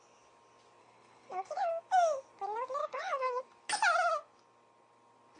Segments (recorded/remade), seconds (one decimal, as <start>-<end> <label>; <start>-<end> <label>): 0.0-0.8 recorded; 0.8-1.7 remade; 1.7-2.8 recorded; 2.8-3.4 remade; 3.4-5.4 recorded